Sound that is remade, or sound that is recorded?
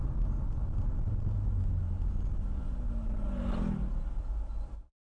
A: recorded